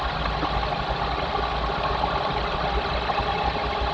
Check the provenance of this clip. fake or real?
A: real